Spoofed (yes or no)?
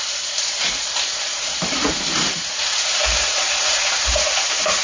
yes